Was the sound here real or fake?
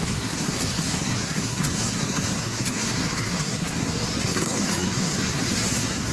fake